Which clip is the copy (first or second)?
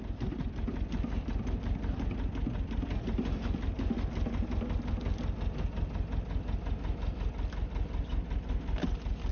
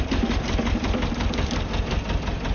second